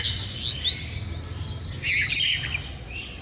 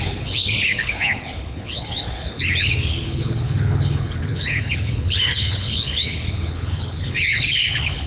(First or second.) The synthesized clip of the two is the second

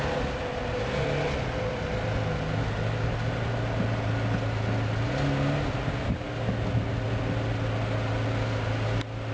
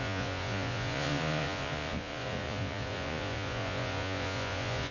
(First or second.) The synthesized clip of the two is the second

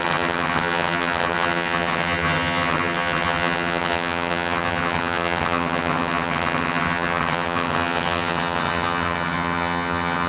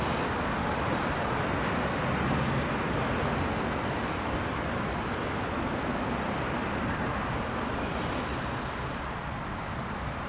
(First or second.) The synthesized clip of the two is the first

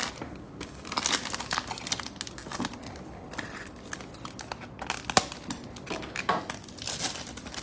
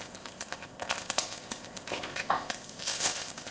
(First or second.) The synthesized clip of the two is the second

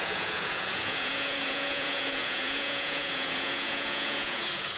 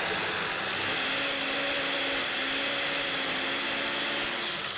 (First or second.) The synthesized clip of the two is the first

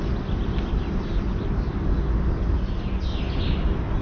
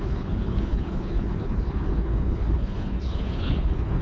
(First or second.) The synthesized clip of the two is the second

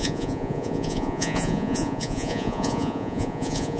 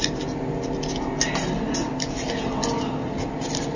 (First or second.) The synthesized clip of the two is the first